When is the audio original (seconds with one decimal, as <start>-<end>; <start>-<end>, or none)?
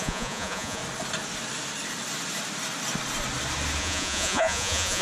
0.8-3.8